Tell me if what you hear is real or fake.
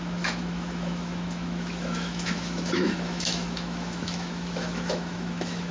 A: fake